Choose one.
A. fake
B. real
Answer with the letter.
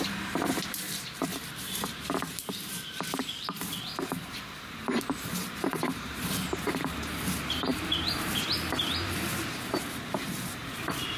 A